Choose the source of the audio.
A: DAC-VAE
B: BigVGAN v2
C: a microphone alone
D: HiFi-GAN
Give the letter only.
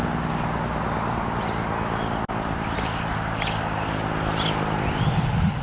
C